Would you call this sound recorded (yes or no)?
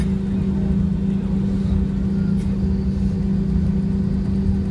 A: yes